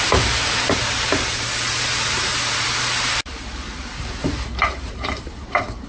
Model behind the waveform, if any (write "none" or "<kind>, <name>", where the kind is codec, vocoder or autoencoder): vocoder, BigVGAN v2